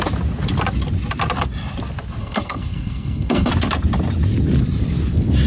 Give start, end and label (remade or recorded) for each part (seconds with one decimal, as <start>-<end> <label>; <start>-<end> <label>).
0.0-2.2 recorded; 2.2-3.5 remade; 3.5-5.5 recorded